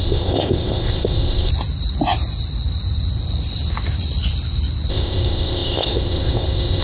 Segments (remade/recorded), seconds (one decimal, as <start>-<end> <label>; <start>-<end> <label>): 0.0-1.5 remade; 1.5-4.9 recorded; 4.9-6.8 remade